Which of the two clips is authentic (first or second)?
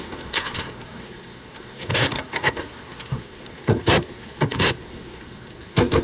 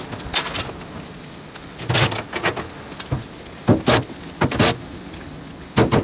second